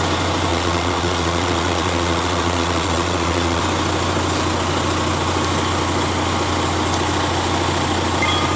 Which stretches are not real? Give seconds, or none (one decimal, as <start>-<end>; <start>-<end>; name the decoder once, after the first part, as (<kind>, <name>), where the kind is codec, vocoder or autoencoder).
0.5-3.6 (vocoder, Vocos)